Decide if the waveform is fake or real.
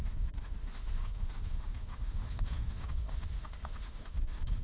fake